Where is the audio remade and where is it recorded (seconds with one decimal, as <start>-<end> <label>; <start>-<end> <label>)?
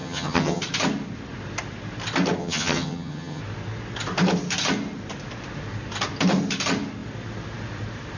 0.0-0.6 remade; 0.6-2.4 recorded; 2.4-3.4 remade; 3.4-8.2 recorded